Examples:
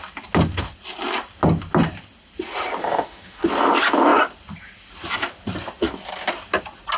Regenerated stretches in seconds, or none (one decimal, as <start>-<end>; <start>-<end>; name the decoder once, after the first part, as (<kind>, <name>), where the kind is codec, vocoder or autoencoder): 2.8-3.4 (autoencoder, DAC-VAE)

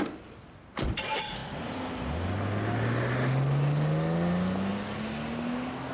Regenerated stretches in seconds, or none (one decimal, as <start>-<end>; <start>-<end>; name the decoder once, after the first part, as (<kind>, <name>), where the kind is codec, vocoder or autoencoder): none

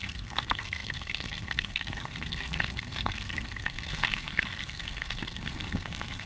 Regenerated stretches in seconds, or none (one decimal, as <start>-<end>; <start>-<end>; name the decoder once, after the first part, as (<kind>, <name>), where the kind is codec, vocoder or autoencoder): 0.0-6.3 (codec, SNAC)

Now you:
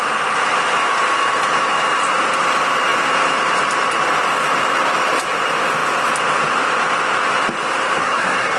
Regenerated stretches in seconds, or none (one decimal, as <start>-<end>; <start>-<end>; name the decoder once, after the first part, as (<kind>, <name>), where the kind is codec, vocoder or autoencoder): 8.0-8.6 (codec, SNAC)